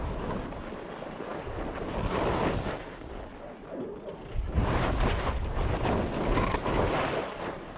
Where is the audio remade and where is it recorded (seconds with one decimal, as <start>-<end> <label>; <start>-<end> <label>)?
0.0-7.8 recorded